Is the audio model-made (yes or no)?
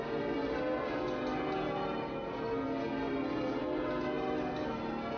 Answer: no